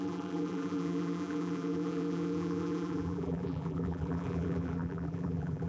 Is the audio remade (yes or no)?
yes